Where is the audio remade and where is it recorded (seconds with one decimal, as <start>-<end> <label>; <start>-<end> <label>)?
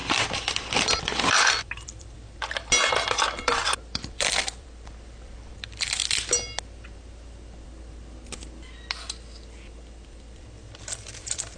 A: 0.0-6.0 remade; 6.0-10.1 recorded; 10.1-11.6 remade